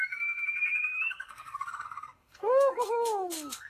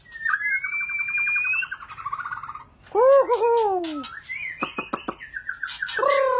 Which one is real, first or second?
second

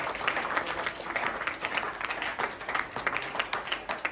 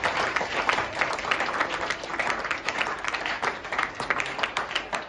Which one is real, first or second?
first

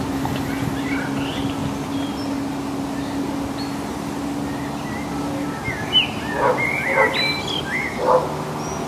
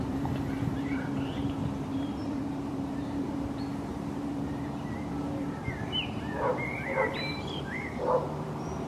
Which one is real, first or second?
first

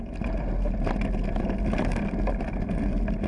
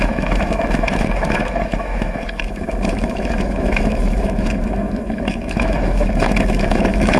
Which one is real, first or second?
first